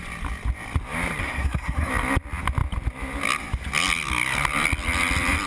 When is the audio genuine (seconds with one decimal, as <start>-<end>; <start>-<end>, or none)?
0.0-1.2; 1.9-5.5